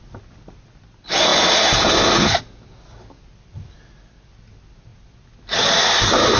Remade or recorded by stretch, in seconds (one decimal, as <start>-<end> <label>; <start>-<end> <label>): 0.0-6.4 recorded